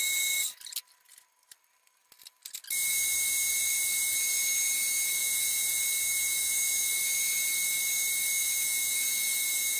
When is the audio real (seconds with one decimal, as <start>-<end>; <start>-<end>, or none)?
0.0-5.2; 5.8-6.2; 6.9-8.4